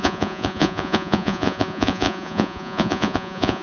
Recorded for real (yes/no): no